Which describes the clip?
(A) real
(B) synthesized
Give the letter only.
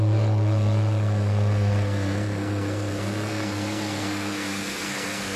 B